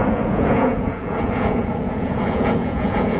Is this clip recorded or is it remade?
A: remade